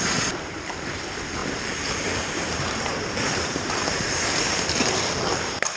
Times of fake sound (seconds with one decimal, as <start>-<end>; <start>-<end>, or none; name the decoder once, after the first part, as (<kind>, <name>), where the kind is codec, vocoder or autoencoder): 1.4-4.9 (vocoder, BigVGAN v2)